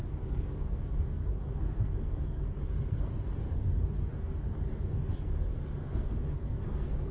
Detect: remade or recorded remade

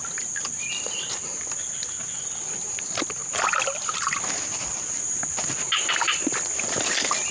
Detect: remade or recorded recorded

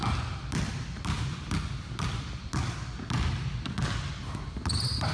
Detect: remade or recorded recorded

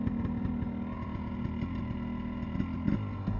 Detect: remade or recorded recorded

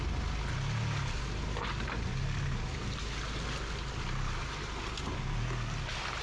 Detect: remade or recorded recorded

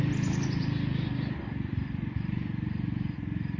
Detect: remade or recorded recorded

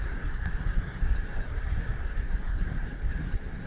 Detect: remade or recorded remade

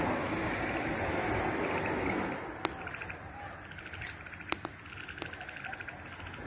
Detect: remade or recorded recorded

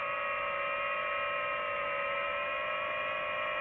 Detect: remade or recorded recorded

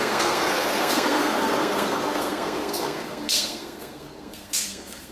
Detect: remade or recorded remade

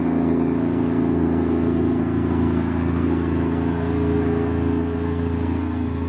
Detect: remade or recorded remade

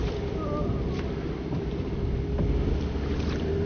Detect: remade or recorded recorded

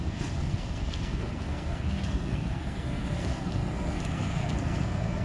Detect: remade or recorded remade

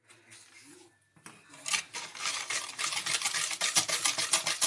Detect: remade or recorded recorded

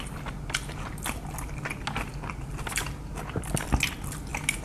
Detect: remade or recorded recorded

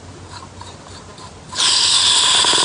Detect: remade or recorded recorded